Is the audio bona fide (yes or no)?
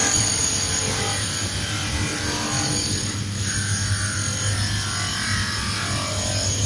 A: yes